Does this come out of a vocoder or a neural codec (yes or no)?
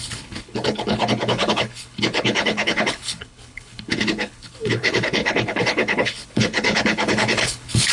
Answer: yes